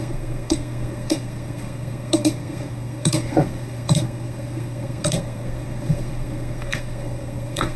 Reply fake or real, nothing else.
fake